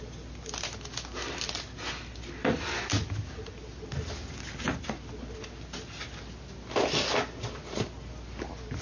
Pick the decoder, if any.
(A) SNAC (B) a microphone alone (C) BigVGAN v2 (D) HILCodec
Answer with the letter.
B